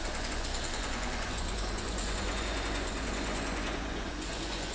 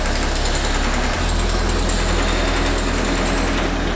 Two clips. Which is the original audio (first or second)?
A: second